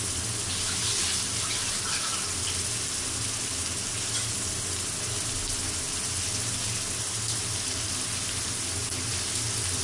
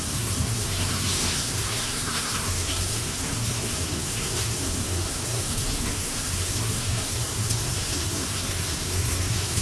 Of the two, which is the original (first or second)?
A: first